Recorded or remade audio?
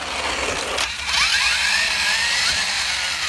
recorded